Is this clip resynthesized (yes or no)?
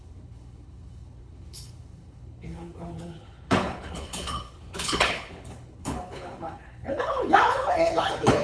yes